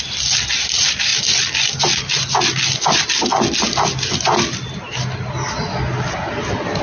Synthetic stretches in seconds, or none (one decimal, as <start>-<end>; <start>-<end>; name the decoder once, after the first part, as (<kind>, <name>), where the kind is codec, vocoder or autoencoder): none